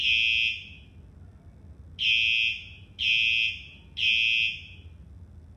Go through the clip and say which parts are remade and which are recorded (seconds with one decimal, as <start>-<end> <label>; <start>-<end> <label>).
0.0-5.6 recorded